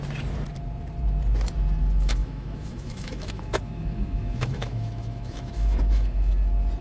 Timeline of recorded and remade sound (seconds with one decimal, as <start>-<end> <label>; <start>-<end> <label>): 0.0-2.2 recorded; 2.2-6.3 remade; 6.3-6.8 recorded

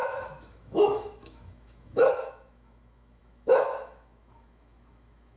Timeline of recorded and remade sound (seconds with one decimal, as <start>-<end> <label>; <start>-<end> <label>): 0.0-5.4 remade

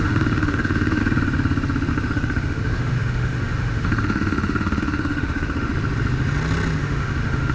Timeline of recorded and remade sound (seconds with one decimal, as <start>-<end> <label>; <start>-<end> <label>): 0.0-1.0 remade; 1.0-1.9 recorded; 1.9-5.7 remade; 5.7-6.8 recorded; 6.8-7.5 remade

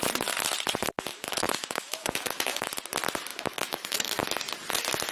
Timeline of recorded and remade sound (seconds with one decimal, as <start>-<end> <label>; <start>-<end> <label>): 0.0-1.1 recorded; 1.1-2.7 remade; 2.7-3.3 recorded; 3.3-4.1 remade; 4.1-5.1 recorded

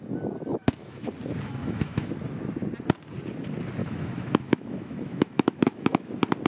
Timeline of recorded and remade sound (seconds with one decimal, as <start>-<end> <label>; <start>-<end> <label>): 0.0-0.5 recorded; 0.5-1.1 remade; 1.1-1.6 recorded; 1.6-2.1 remade; 2.1-3.8 recorded; 3.8-6.1 remade; 6.1-6.5 recorded

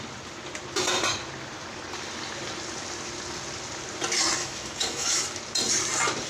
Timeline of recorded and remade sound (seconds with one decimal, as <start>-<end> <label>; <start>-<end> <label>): 0.0-4.4 recorded; 4.4-5.4 remade; 5.4-6.3 recorded